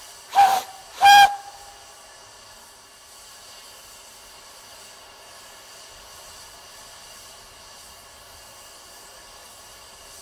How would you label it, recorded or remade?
recorded